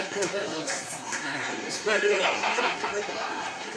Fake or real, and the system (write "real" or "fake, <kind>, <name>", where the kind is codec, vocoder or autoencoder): fake, codec, SNAC